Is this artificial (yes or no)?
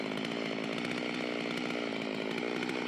no